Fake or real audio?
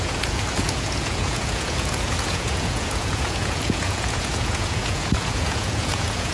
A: fake